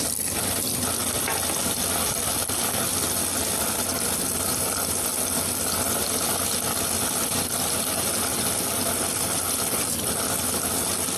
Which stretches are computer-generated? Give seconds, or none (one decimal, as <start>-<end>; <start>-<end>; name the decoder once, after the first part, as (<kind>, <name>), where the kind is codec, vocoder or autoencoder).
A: none